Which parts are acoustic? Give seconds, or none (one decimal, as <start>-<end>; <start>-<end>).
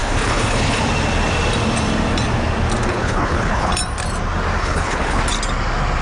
0.8-2.9; 3.7-4.6; 5.2-6.0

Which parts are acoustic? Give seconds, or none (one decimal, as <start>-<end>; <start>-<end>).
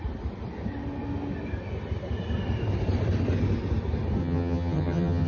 0.0-4.2